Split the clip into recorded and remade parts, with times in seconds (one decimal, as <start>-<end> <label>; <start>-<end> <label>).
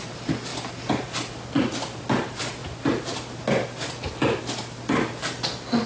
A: 0.0-5.9 recorded